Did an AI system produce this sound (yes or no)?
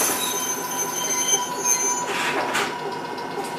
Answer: no